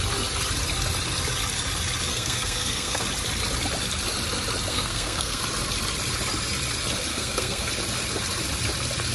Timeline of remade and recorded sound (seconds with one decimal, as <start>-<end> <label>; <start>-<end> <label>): 0.0-2.1 recorded; 2.1-3.0 remade; 3.0-4.7 recorded; 4.7-5.4 remade; 5.4-7.1 recorded; 7.1-7.7 remade; 7.7-9.1 recorded